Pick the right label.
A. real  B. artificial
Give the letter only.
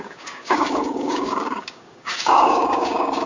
B